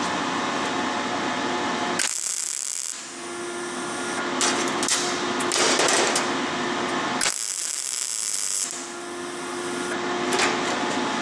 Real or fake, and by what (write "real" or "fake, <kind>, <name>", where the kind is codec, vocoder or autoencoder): real